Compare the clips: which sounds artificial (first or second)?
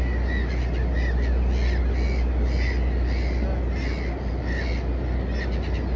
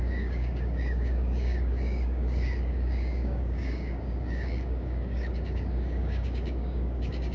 second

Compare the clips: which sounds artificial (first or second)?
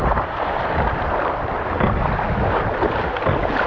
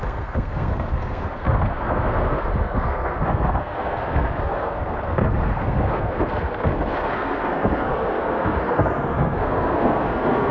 second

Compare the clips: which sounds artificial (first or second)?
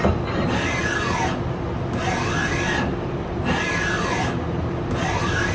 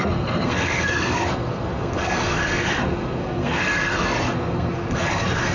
second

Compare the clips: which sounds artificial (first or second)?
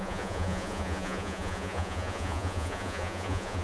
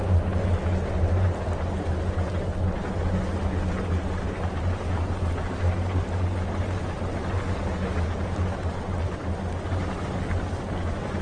first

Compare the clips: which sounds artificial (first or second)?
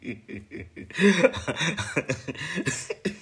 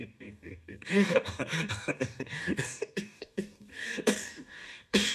second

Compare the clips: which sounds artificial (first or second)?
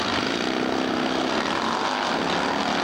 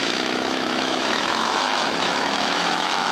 second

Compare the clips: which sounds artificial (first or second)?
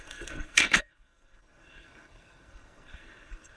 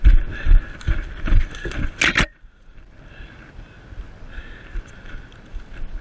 first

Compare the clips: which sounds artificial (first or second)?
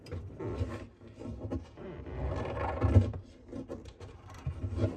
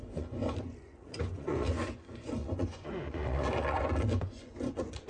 second